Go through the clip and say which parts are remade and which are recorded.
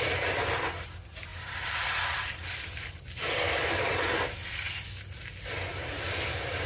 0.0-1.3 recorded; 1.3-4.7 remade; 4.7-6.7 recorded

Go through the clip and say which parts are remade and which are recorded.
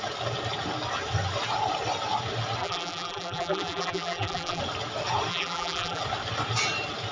0.0-2.6 recorded; 2.6-4.6 remade; 4.6-5.3 recorded; 5.3-6.0 remade; 6.0-7.1 recorded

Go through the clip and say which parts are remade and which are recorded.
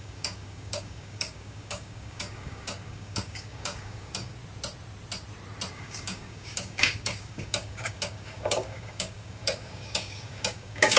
0.0-4.4 remade; 4.4-5.7 recorded; 5.7-11.0 remade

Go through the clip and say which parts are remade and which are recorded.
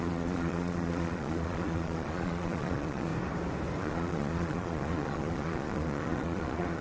0.0-3.1 remade; 3.1-3.8 recorded; 3.8-6.8 remade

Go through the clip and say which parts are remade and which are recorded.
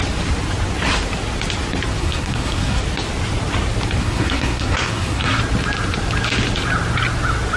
0.0-2.0 recorded; 2.0-2.8 remade; 2.8-4.0 recorded; 4.0-5.4 remade; 5.4-7.6 recorded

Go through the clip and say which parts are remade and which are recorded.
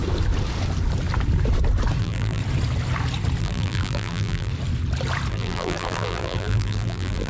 0.0-2.0 recorded; 2.0-2.4 remade; 2.4-3.4 recorded; 3.4-4.5 remade; 4.5-5.3 recorded; 5.3-7.3 remade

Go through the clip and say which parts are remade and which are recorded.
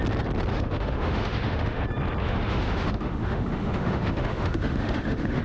0.0-0.5 recorded; 0.5-1.8 remade; 1.8-2.2 recorded; 2.2-5.4 remade